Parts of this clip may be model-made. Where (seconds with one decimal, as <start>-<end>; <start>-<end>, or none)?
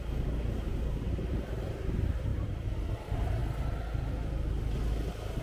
0.0-3.4